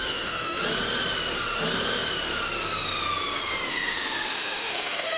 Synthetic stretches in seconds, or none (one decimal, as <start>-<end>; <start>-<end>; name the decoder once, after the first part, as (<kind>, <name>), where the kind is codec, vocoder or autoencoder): 0.0-0.6 (autoencoder, DAC-VAE); 3.7-5.2